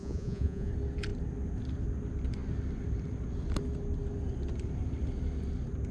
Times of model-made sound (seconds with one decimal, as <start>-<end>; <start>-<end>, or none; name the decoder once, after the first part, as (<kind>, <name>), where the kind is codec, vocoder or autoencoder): 0.0-0.7 (vocoder, Vocos)